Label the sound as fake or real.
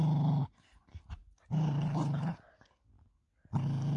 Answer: real